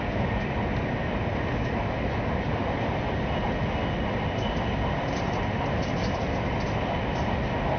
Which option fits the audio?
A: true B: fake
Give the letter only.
A